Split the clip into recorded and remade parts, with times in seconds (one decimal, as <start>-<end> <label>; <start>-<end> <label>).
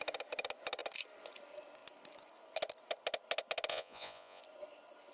0.0-3.7 recorded; 3.7-4.4 remade; 4.4-5.1 recorded